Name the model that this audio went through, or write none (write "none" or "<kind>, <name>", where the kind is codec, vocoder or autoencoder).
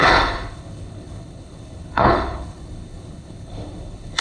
codec, HILCodec